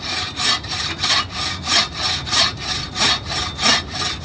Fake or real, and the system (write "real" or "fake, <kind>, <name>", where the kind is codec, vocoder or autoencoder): real